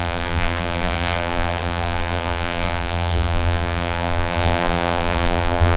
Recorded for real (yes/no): no